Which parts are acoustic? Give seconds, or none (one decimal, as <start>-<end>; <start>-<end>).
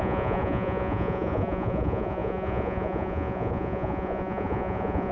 none